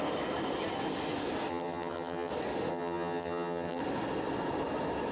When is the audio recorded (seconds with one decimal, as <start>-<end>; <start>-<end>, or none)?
0.0-1.5; 2.3-2.7; 3.8-5.1